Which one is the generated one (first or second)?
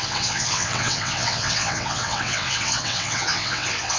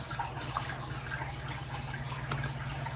first